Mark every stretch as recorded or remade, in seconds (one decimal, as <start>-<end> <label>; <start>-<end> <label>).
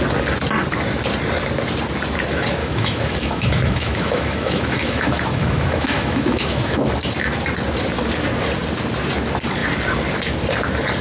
0.0-2.6 recorded; 2.6-6.9 remade; 6.9-11.0 recorded